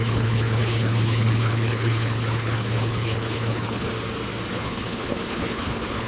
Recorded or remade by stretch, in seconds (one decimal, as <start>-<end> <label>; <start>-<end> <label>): 0.0-3.9 remade; 3.9-4.5 recorded; 4.5-6.1 remade